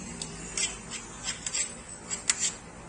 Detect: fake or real real